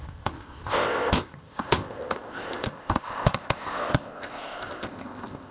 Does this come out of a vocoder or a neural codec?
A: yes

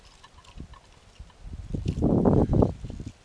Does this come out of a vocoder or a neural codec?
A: no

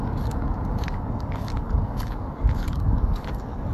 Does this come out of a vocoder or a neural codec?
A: yes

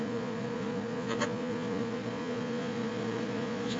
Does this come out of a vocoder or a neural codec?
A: yes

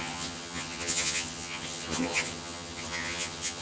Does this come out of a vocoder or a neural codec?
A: yes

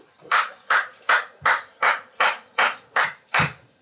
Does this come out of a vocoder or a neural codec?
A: yes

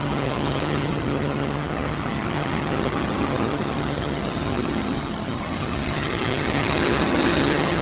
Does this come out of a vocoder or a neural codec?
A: yes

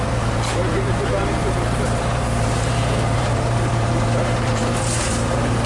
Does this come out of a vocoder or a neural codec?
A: yes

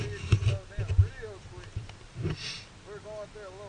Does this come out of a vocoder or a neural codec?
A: no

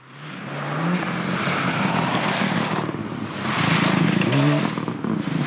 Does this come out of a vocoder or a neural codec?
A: no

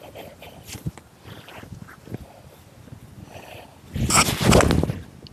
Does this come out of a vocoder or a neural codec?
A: no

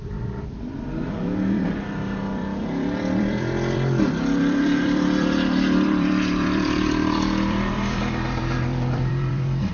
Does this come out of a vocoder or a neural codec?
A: yes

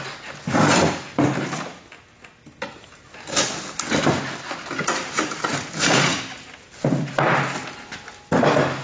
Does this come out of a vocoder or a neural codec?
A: no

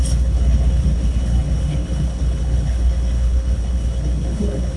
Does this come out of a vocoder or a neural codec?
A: yes